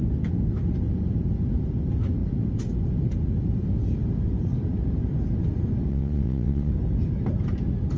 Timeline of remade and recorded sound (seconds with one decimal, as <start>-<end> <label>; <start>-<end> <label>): 0.0-5.9 recorded; 5.9-6.7 remade; 6.7-8.0 recorded